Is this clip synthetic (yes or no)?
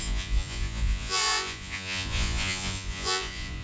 yes